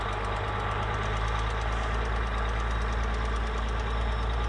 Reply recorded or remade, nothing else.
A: recorded